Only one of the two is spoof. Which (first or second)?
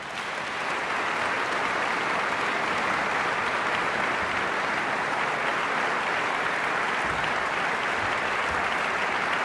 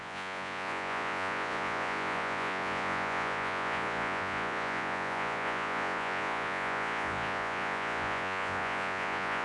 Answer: second